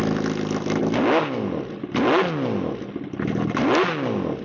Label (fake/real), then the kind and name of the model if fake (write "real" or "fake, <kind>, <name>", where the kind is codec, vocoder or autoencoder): real